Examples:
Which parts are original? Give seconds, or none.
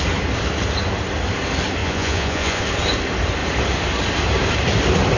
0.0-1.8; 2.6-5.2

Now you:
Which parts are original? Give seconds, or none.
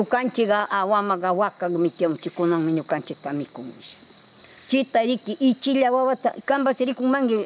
0.0-0.6; 4.7-6.2; 7.0-7.5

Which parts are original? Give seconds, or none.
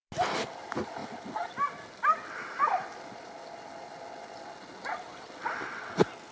0.0-6.3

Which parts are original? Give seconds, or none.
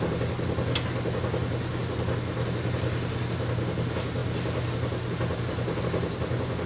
0.0-6.7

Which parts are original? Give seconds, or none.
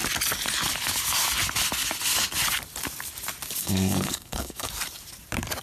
0.0-3.6; 4.7-5.6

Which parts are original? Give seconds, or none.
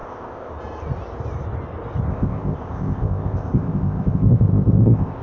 0.5-2.1